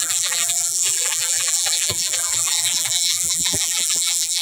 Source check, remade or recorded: remade